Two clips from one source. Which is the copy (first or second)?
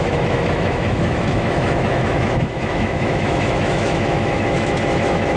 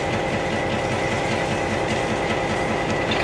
first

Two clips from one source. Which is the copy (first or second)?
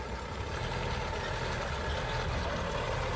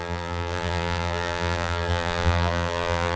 second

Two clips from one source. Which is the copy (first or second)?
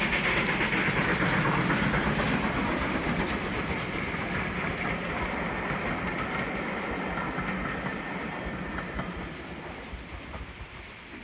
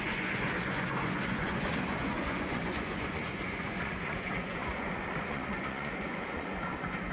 second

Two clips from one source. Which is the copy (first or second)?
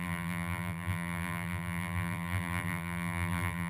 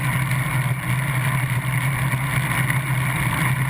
first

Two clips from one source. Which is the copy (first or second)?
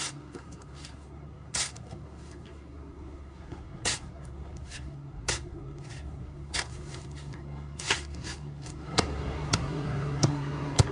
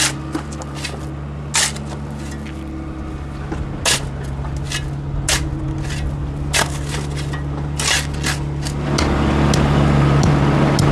first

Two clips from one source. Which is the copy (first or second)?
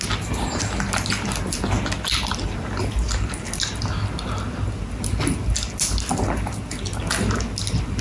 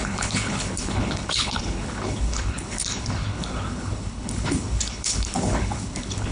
second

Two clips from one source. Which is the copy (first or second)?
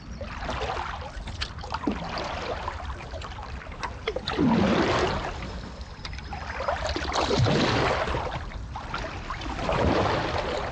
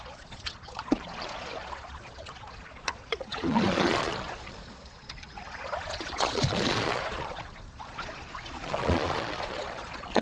second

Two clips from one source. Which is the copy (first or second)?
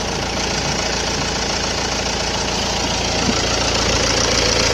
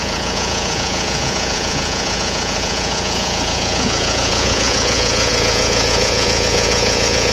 second